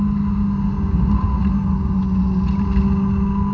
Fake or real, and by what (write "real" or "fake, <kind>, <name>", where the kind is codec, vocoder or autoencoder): real